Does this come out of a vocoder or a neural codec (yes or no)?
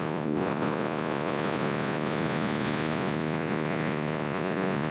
yes